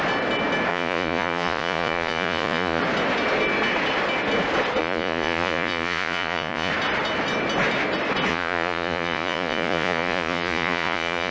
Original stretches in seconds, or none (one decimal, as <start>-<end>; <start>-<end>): 0.0-0.7; 2.8-4.8; 6.7-8.3